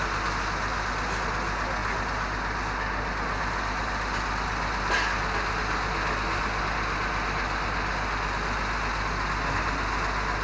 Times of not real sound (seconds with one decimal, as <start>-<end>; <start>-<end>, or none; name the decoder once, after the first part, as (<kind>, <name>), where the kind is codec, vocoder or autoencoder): none

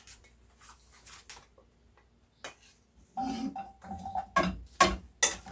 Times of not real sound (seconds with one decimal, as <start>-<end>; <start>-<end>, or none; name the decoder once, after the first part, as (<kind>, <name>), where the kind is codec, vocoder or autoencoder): none

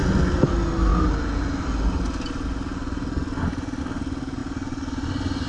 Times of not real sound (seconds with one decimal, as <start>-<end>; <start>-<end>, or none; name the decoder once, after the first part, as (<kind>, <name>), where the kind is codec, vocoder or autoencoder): none

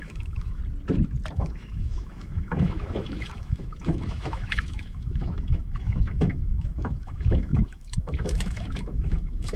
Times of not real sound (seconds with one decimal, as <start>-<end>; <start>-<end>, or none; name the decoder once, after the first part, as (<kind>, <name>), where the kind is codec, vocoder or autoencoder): 0.0-0.6 (autoencoder, DAC-VAE); 1.3-9.6